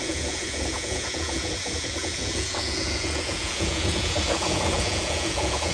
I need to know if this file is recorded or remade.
remade